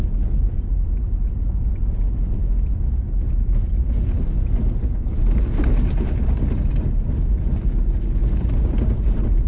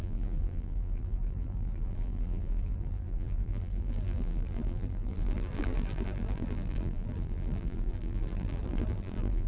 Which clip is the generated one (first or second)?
second